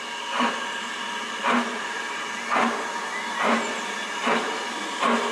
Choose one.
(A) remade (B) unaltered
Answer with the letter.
B